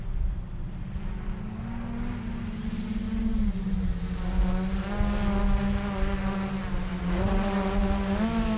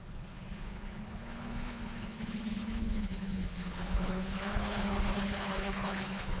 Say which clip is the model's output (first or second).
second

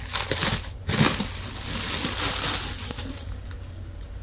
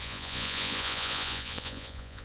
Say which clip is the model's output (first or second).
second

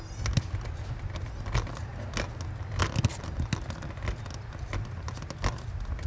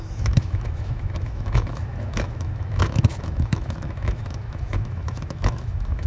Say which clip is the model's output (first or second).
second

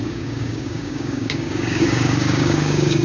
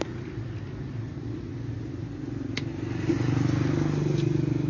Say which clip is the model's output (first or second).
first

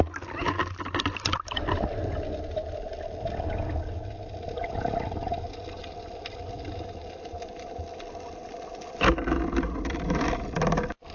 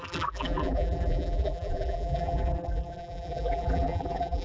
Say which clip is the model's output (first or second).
second